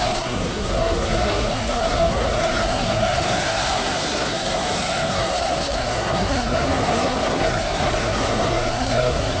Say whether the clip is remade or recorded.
remade